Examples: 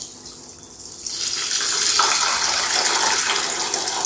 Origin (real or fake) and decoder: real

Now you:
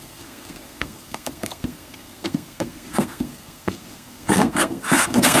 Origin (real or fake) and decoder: fake, codec, SNAC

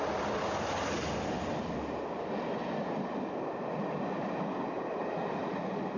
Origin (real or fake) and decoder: real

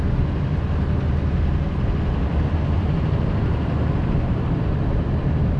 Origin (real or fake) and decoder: real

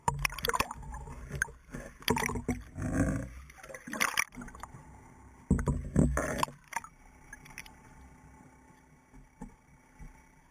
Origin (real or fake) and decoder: real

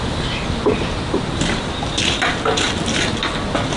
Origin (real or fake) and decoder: real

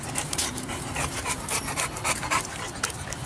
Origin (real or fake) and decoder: fake, vocoder, BigVGAN v2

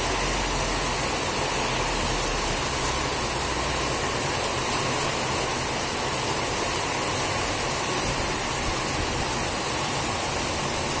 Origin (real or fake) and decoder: real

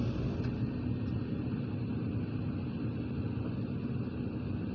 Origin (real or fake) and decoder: real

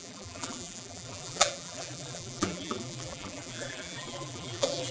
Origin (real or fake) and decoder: fake, vocoder, BigVGAN v2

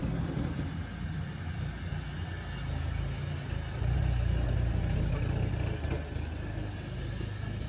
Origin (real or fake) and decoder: real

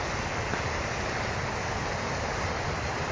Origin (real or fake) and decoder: real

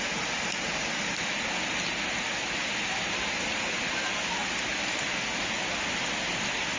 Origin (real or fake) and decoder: real